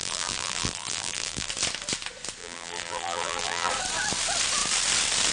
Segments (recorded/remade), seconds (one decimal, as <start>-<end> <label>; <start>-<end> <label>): 0.0-1.5 remade; 1.5-2.4 recorded; 2.4-3.7 remade; 3.7-5.3 recorded